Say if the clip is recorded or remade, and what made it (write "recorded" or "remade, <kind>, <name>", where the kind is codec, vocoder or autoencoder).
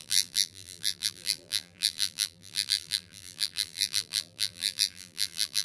remade, vocoder, BigVGAN v2